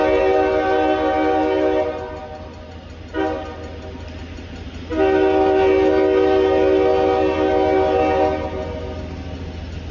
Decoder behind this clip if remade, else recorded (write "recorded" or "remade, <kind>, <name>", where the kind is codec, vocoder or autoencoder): recorded